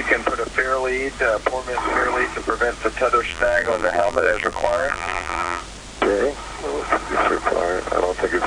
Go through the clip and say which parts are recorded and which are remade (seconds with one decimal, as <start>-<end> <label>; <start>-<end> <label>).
0.0-3.3 recorded; 3.3-5.6 remade; 5.6-8.5 recorded